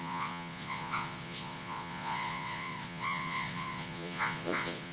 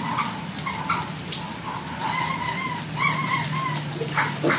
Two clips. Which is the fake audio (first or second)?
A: first